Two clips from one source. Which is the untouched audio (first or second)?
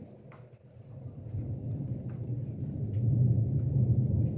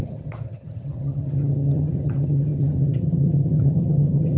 first